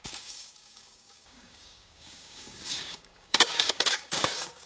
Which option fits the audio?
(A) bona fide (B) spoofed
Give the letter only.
B